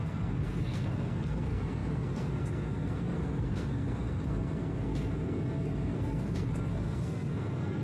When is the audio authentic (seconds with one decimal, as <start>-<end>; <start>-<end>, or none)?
none